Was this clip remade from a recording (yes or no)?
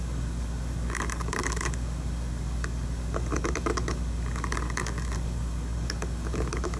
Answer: yes